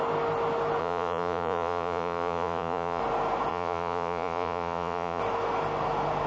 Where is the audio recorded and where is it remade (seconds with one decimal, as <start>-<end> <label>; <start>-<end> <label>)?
0.0-0.8 recorded; 0.8-3.0 remade; 3.0-3.5 recorded; 3.5-5.2 remade; 5.2-6.3 recorded